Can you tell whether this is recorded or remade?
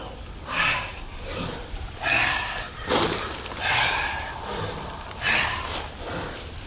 recorded